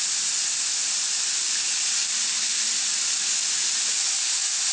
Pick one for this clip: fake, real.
real